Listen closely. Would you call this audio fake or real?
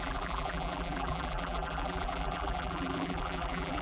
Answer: fake